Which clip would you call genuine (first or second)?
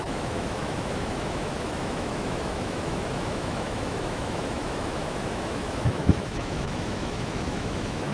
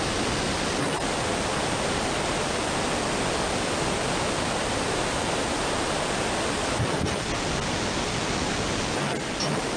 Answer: second